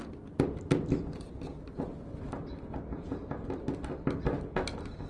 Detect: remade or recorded recorded